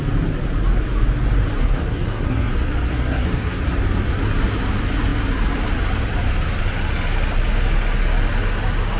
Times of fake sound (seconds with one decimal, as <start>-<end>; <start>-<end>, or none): 1.6-2.5; 2.9-3.6